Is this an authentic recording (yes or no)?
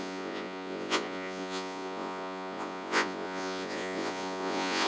no